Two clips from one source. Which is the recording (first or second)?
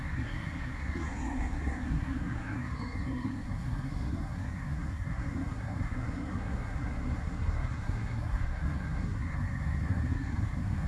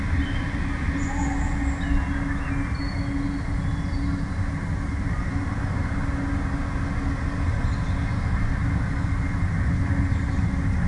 second